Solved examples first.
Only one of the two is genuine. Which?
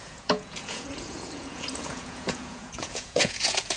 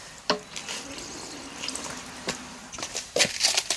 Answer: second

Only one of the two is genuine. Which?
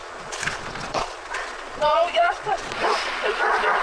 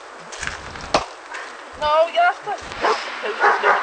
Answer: second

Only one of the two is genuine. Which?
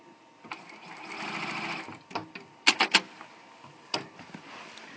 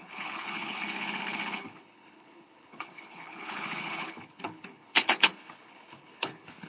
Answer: first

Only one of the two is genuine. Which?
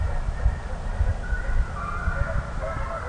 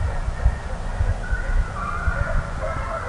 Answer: first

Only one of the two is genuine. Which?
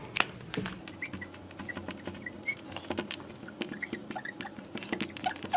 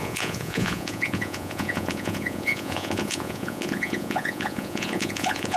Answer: first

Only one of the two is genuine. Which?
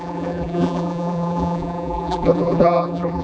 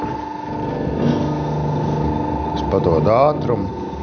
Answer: second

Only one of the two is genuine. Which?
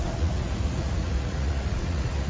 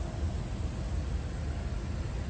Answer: second